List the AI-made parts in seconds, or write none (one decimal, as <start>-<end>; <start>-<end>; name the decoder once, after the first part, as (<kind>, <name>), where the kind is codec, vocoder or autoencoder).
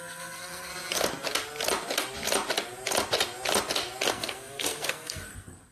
0.0-0.7 (codec, SNAC); 4.1-5.7